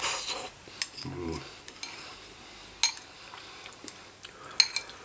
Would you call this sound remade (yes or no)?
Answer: no